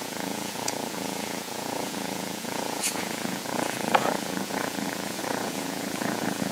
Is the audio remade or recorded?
remade